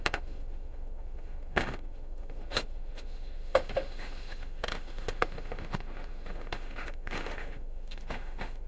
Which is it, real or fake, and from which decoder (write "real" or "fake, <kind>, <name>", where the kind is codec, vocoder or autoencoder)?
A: fake, autoencoder, DAC-VAE